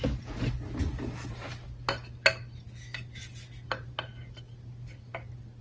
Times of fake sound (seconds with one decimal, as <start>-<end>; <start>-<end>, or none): none